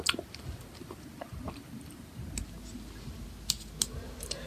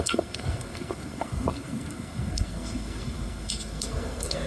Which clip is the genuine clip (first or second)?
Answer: first